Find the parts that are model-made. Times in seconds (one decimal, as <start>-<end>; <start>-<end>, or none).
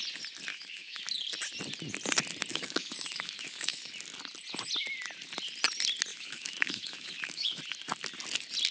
0.5-1.0; 2.5-3.9; 6.1-7.6